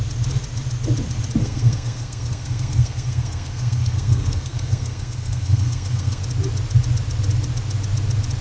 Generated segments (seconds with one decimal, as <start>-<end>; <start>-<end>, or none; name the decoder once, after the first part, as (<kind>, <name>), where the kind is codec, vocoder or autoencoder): 1.4-6.2 (codec, SNAC)

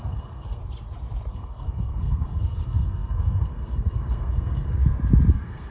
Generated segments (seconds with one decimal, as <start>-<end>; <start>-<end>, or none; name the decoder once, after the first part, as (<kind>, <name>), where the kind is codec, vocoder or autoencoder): 0.0-0.6 (codec, SNAC); 1.3-4.8; 5.3-5.7

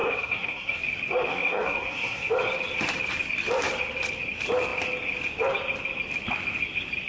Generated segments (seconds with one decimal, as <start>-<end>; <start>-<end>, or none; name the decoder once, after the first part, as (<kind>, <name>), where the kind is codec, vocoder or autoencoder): 0.0-0.8 (codec, SNAC); 1.3-2.3